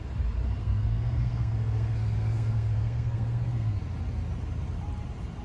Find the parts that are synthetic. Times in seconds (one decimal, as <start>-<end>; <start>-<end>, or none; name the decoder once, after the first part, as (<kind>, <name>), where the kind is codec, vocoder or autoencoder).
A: 0.6-3.8 (codec, SNAC)